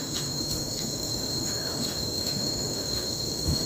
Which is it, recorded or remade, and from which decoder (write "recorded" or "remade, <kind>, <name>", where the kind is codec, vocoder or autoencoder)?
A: remade, autoencoder, DAC-VAE